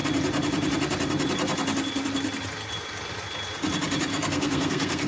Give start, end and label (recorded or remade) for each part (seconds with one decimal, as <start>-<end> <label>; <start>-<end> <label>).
0.0-4.1 recorded; 4.1-5.1 remade